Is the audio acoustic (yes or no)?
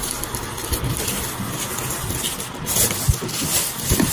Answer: yes